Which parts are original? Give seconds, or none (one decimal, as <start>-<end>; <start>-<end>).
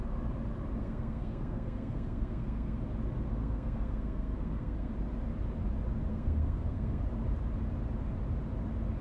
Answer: 0.0-0.8; 2.8-3.3; 4.9-6.1; 7.0-9.0